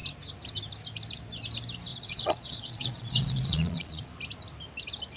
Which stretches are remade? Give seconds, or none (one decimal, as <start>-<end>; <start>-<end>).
1.9-4.1